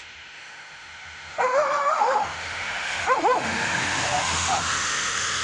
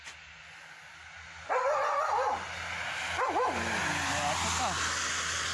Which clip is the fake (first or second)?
first